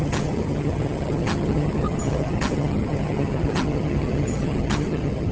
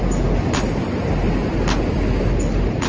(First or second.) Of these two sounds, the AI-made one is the first